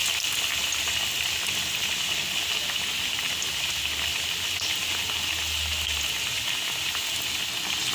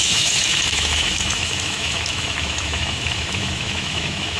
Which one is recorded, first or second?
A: first